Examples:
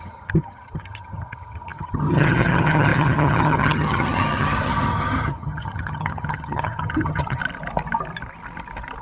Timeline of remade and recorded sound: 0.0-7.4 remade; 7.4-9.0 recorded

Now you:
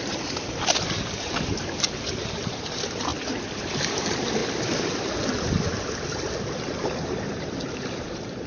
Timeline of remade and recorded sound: 0.0-3.1 remade; 3.1-3.6 recorded; 3.6-4.4 remade; 4.4-5.4 recorded; 5.4-8.5 remade

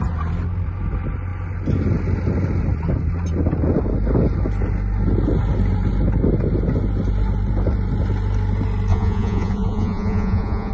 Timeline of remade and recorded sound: 0.0-8.9 recorded; 8.9-10.7 remade